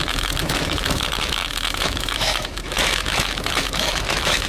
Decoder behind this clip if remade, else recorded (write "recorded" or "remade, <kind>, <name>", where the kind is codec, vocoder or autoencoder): remade, autoencoder, DAC-VAE